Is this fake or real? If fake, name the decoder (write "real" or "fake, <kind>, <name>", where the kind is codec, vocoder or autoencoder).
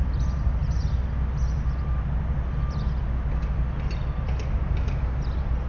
real